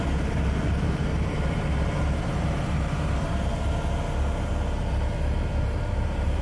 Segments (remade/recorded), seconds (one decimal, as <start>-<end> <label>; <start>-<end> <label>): 0.0-1.1 remade; 1.1-2.0 recorded; 2.0-3.5 remade; 3.5-4.9 recorded; 4.9-6.4 remade